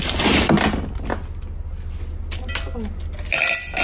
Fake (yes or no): no